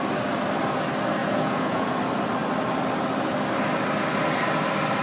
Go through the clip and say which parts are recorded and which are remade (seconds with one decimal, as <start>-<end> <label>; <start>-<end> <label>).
0.0-1.2 recorded; 1.2-1.9 remade; 1.9-5.0 recorded